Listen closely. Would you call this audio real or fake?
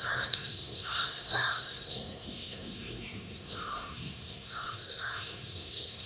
fake